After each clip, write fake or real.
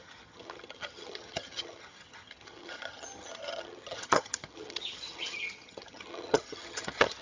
fake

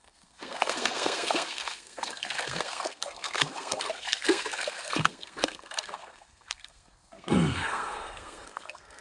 fake